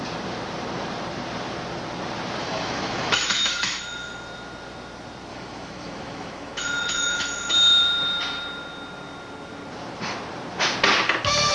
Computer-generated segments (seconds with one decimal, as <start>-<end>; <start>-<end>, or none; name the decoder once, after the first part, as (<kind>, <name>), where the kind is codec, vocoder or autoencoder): 2.4-4.1 (autoencoder, DAC-VAE); 5.3-7.5